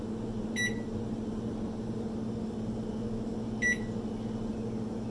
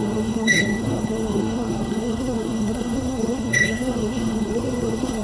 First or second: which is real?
first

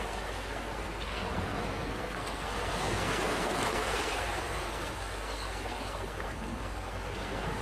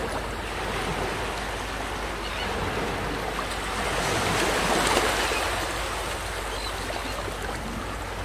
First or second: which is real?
second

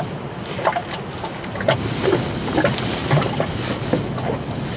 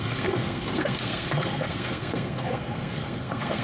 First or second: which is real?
first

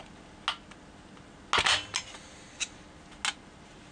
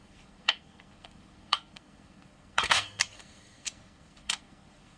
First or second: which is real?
first